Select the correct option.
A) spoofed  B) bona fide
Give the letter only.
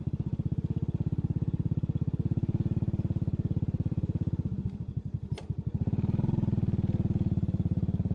A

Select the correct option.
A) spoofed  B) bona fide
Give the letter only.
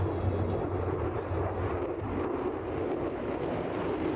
B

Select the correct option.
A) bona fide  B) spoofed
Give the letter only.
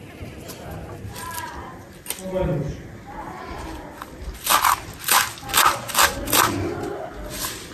A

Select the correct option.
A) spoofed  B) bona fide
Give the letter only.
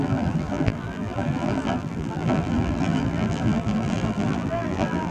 A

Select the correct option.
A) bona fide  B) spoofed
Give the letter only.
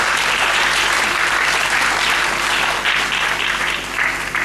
B